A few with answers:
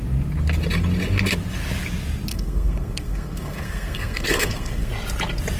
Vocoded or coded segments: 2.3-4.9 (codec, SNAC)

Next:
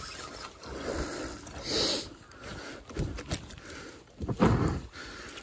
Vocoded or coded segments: none

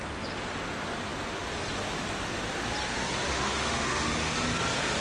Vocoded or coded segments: 3.3-4.1 (autoencoder, DAC-VAE)

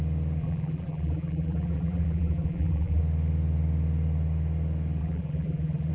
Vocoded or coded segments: 0.4-3.0 (vocoder, BigVGAN v2); 5.0-5.9

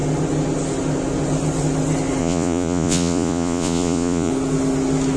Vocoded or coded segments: 2.2-4.3 (vocoder, Vocos)